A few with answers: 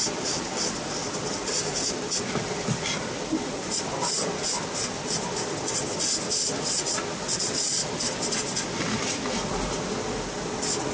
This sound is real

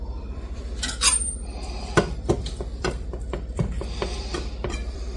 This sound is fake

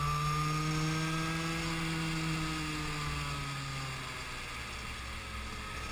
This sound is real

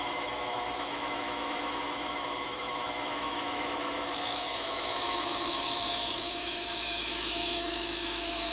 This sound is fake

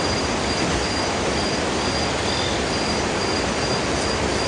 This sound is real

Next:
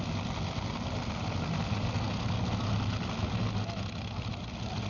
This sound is real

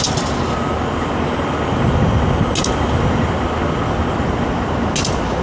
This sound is real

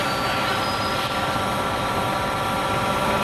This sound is real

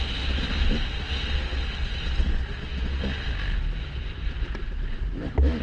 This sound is real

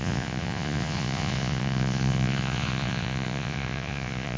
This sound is fake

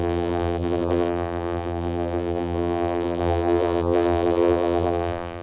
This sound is fake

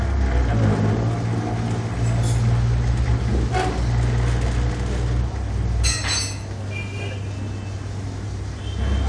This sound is real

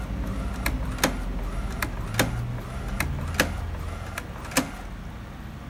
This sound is real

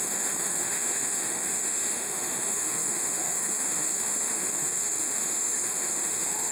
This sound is fake